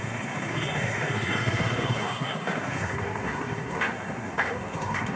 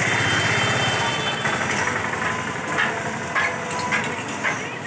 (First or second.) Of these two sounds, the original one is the second